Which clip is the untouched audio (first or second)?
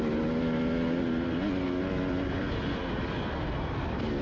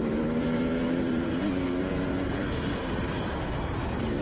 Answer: first